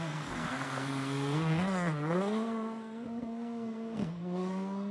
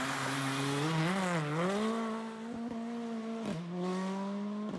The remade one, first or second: first